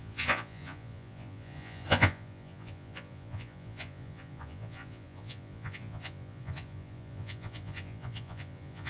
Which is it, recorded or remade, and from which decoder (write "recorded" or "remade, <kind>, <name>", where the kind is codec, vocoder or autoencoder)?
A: remade, vocoder, Vocos